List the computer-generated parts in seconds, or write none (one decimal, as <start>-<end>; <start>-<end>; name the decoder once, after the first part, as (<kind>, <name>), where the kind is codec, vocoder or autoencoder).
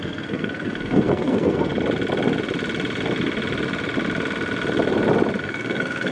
0.0-1.7 (codec, SNAC); 5.4-6.1